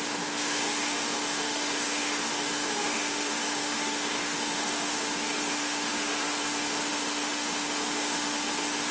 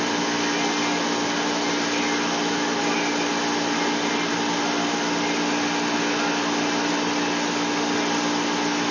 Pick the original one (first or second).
second